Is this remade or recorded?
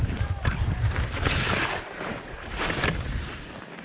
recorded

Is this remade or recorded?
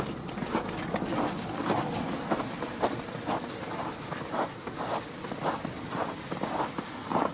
recorded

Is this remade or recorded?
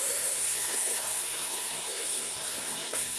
remade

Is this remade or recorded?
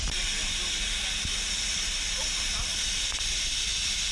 recorded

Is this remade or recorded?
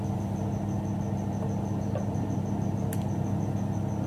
recorded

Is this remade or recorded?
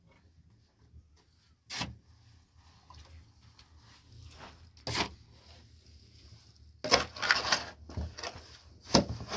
recorded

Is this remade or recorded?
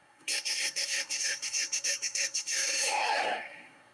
remade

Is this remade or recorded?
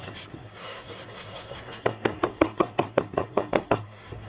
remade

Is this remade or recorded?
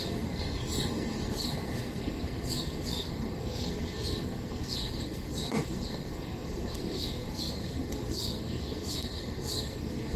remade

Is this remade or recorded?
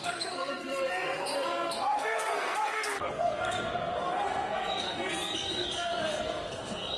remade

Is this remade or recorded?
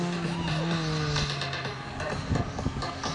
recorded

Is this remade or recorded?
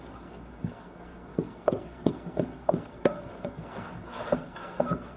remade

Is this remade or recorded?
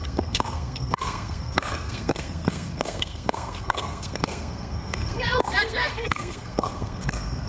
remade